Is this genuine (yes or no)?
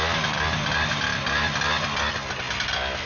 yes